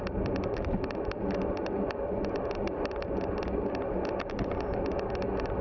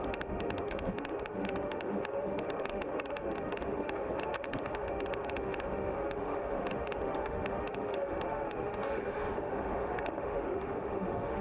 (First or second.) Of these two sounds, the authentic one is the first